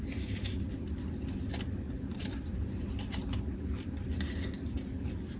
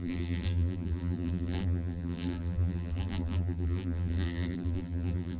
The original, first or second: first